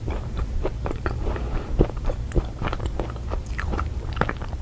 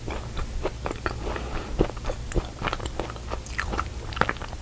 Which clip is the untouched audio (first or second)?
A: second